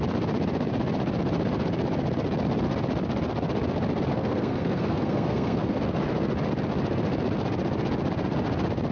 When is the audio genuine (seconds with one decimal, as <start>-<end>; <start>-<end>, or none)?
0.0-4.1; 5.8-8.9

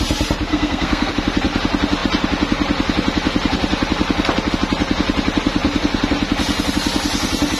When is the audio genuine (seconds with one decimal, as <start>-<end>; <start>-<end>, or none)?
0.0-0.5; 1.1-7.6

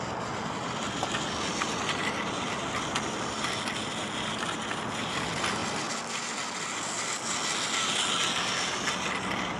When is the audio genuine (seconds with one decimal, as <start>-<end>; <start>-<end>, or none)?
0.0-9.6

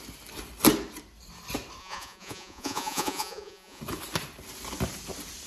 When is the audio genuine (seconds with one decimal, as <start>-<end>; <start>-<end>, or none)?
0.0-1.8; 3.8-5.5

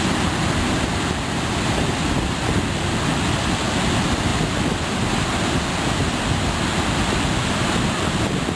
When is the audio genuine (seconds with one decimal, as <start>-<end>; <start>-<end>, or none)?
0.0-8.6

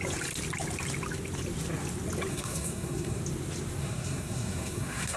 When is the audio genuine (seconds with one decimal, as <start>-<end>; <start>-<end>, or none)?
0.0-2.3; 3.2-3.8

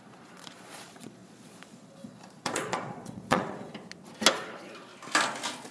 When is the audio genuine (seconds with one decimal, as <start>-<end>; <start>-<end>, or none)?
3.7-4.3; 4.9-5.7